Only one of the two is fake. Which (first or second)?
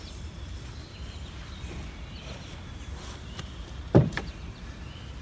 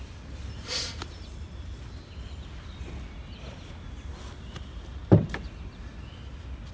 first